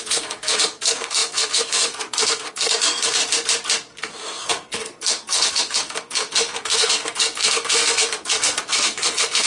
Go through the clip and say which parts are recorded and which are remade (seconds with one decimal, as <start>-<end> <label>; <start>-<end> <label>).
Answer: 0.0-3.2 remade; 3.2-4.0 recorded; 4.0-9.5 remade